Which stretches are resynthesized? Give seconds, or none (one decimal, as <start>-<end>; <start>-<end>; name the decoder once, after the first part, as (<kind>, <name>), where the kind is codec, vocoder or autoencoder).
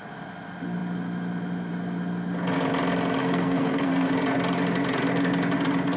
3.2-4.1 (codec, SNAC)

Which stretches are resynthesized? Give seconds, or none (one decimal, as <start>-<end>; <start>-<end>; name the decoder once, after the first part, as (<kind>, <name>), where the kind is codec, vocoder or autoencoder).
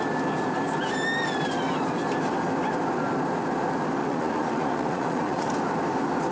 4.0-5.5 (vocoder, Vocos)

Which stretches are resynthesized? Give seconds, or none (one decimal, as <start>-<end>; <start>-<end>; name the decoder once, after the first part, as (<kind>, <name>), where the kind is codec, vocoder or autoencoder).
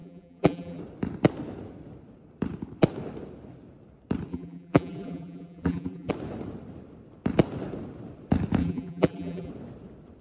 0.0-0.8 (vocoder, BigVGAN v2); 4.3-6.1; 8.6-9.5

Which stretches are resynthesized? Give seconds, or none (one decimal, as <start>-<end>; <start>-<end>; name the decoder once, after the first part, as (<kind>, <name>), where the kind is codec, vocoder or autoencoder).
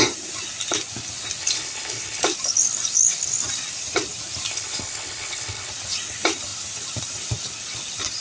1.4-2.2 (codec, HILCodec); 4.5-5.7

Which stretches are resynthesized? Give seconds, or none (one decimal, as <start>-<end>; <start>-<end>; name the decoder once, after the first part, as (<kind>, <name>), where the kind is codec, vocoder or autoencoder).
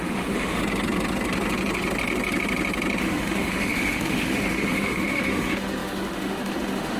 0.0-0.6 (autoencoder, DAC-VAE); 3.0-7.0